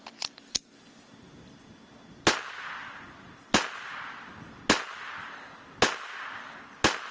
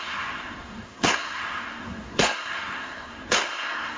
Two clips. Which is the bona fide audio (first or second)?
first